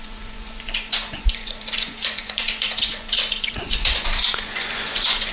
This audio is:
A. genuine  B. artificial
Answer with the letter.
B